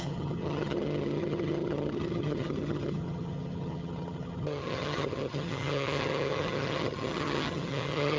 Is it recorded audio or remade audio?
remade